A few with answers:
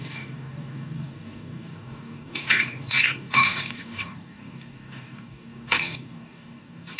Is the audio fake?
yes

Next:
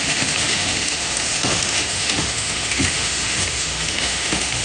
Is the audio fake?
yes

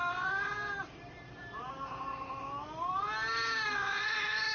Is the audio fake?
no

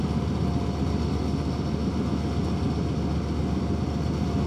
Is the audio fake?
no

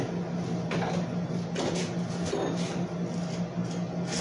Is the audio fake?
no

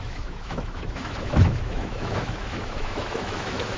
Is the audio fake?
yes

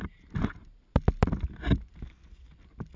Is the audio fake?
no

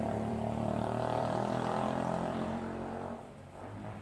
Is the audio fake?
yes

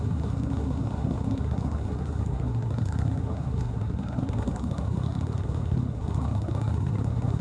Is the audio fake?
yes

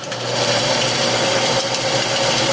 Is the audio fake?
yes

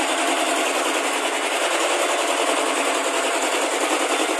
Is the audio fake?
no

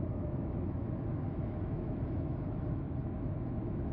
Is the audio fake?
yes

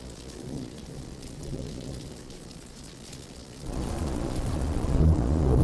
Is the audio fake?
yes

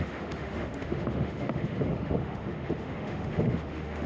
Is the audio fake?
yes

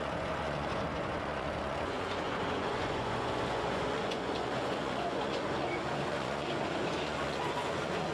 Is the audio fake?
yes